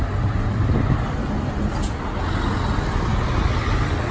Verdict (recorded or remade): recorded